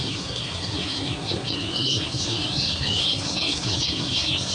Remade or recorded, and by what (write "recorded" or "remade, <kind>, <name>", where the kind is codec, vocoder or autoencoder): remade, codec, SNAC